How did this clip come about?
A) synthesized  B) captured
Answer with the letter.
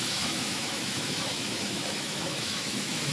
A